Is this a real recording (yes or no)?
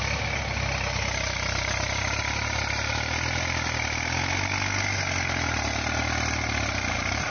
yes